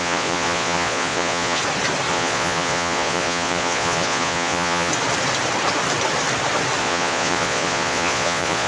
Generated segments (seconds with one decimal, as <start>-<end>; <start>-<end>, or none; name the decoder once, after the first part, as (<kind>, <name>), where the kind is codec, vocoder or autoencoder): 0.0-1.6 (vocoder, Vocos); 2.1-4.9; 6.8-8.7